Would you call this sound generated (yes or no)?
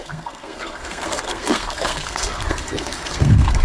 yes